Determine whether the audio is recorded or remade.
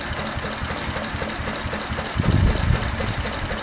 recorded